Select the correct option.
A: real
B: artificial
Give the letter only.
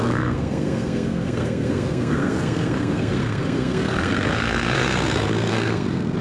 B